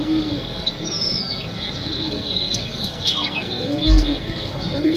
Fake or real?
fake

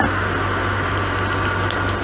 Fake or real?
real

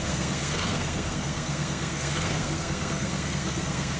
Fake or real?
fake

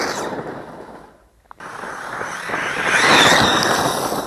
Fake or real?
real